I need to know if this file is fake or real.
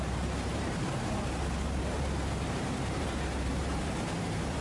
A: fake